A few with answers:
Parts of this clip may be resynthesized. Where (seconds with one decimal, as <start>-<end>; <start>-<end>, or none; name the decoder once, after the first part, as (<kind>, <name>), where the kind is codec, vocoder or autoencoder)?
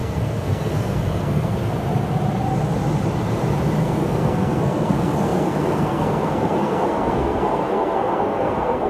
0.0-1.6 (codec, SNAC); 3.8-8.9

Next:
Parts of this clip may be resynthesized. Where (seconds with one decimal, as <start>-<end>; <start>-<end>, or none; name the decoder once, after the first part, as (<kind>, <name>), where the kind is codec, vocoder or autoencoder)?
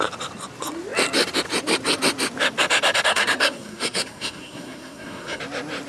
3.1-5.4 (codec, SNAC)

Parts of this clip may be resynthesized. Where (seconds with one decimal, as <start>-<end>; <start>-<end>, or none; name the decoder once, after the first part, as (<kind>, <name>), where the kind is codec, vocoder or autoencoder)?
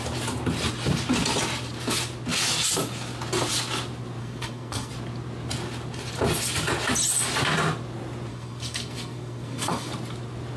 4.2-4.9 (codec, SNAC); 8.3-9.9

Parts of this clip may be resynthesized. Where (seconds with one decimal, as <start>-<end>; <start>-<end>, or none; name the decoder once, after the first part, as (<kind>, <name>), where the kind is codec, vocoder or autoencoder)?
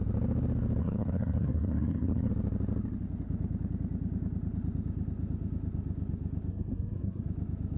0.8-2.3 (codec, SNAC); 6.5-7.2